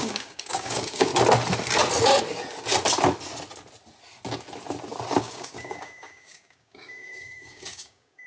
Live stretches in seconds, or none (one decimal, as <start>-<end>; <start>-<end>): 1.1-5.2